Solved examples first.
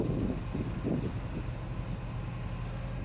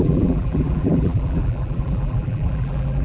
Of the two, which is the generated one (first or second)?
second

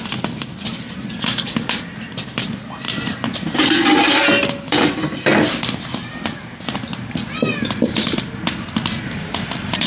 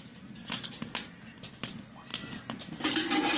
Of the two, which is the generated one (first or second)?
first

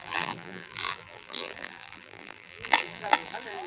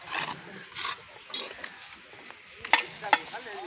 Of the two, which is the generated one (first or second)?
first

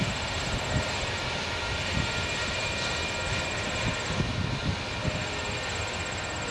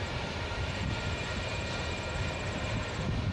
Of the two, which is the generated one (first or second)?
second